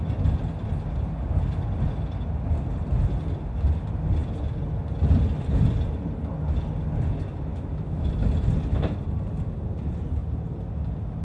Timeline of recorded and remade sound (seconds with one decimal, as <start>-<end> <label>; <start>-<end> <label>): 0.0-7.5 recorded; 7.5-8.1 remade; 8.1-11.2 recorded